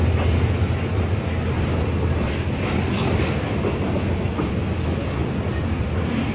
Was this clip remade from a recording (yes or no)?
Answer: no